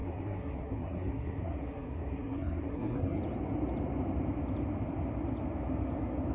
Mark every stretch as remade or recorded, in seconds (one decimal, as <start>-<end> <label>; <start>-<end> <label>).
0.0-3.2 remade; 3.2-6.3 recorded